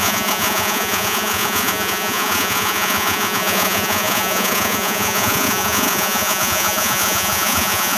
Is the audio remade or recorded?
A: remade